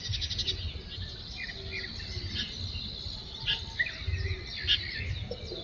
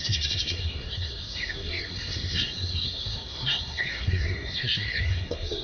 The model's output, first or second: second